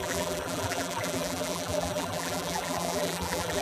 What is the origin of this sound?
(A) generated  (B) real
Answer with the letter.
A